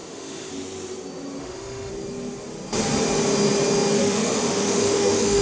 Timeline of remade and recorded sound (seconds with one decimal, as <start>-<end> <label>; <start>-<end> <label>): 0.0-0.5 remade; 0.5-1.4 recorded; 1.4-1.9 remade; 1.9-4.0 recorded; 4.0-5.4 remade